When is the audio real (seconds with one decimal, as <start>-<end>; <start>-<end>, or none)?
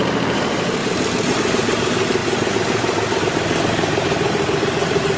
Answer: 0.8-1.3